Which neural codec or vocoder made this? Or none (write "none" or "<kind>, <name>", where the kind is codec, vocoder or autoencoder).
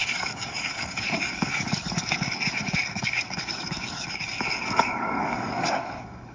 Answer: codec, DAC